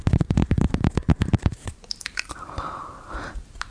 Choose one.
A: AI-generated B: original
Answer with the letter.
A